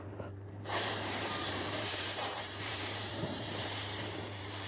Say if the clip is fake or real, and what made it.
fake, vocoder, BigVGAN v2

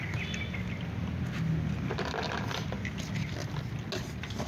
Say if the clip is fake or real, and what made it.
real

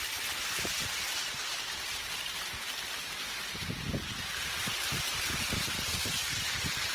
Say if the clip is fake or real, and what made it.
real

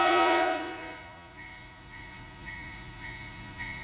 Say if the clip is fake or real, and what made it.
fake, vocoder, Vocos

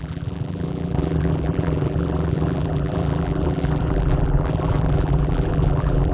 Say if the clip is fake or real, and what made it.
fake, vocoder, BigVGAN v2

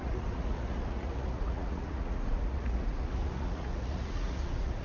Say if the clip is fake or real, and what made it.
fake, vocoder, Vocos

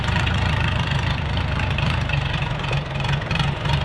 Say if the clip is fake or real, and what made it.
fake, vocoder, Vocos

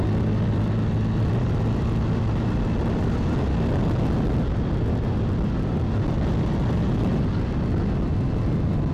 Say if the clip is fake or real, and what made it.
real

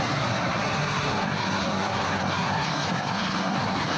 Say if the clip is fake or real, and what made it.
fake, codec, SNAC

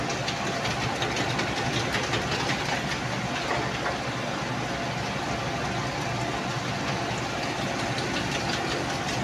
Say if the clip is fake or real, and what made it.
real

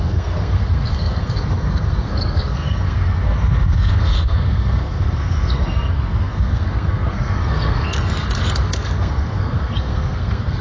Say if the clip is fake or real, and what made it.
fake, codec, SNAC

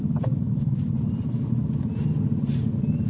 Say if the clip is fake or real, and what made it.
real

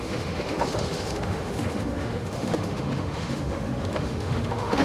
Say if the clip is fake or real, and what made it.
fake, autoencoder, DAC-VAE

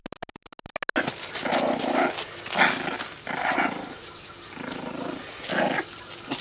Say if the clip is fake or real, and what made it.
real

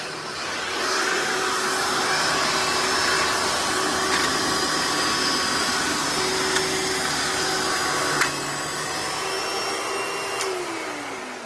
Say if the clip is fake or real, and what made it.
real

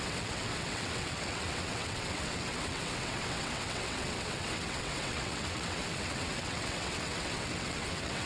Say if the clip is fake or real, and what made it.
fake, vocoder, WaveNeXt